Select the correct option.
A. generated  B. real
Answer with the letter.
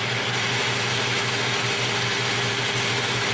B